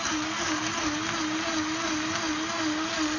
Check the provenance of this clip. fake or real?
real